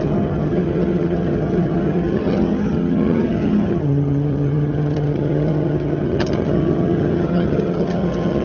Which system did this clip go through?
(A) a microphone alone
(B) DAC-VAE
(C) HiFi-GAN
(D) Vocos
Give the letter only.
C